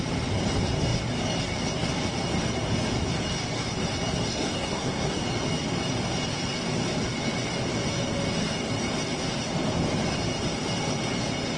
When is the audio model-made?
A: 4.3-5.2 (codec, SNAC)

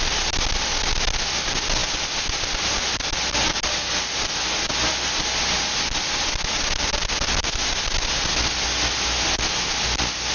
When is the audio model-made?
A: none

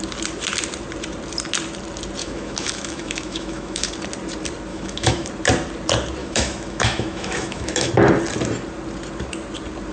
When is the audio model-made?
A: 2.2-3.9 (autoencoder, DAC-VAE); 4.7-5.3; 6.2-7.9

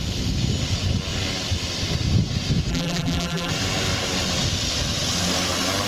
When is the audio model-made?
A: 2.7-3.5 (vocoder, BigVGAN v2)

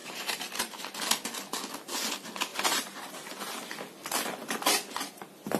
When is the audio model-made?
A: 0.0-0.8 (vocoder, BigVGAN v2); 2.5-3.1